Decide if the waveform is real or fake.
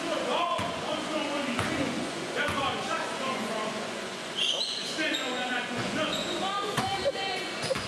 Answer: fake